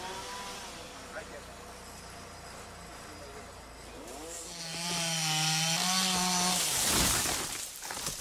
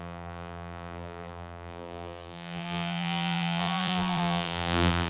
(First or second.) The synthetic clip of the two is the second